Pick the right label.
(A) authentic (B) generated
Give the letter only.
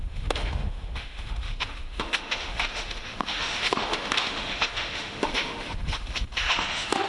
B